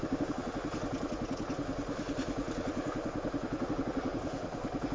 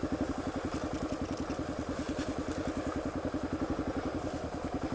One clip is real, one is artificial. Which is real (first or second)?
second